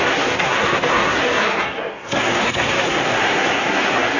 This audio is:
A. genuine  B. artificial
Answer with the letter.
B